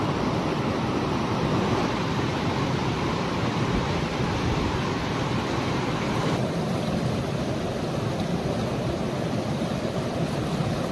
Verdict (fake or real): fake